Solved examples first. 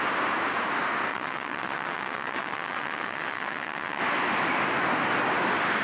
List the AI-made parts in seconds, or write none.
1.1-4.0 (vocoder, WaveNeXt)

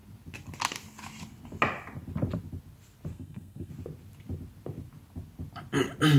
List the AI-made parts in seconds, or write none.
3.1-3.7 (codec, SNAC)

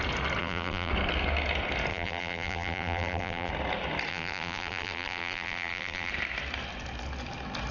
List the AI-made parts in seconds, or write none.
0.4-0.9 (vocoder, BigVGAN v2); 1.9-3.5; 4.1-6.1

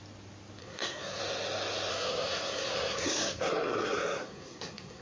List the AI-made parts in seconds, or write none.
0.6-1.2 (codec, SNAC); 1.9-5.0

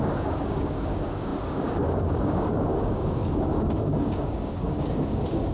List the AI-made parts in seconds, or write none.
0.0-5.5 (codec, DAC)